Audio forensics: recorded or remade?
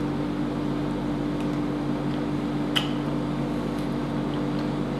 recorded